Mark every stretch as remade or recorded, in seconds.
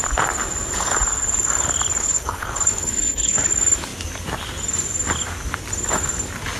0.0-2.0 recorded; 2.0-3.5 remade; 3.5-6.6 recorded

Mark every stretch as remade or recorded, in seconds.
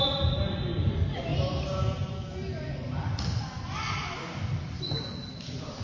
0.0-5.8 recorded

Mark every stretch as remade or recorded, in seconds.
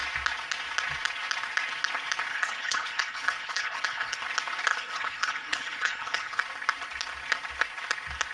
0.0-2.3 recorded; 2.3-4.2 remade; 4.2-4.7 recorded; 4.7-6.4 remade; 6.4-8.3 recorded